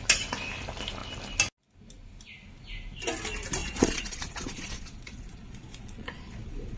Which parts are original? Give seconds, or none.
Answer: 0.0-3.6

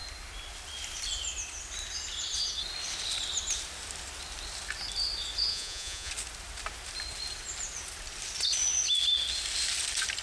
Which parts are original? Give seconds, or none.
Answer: 0.0-5.5; 6.1-10.2

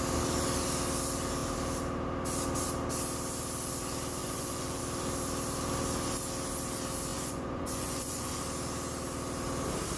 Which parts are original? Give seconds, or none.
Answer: 0.0-4.2; 4.8-7.1; 8.4-10.0

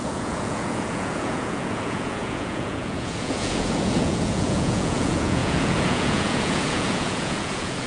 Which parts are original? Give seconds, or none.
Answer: none

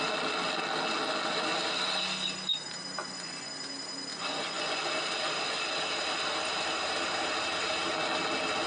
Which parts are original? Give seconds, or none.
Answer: 0.0-3.0; 3.5-4.1; 4.9-8.7